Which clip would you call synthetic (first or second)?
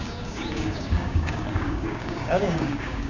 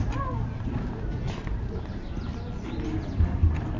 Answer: first